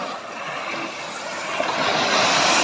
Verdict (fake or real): real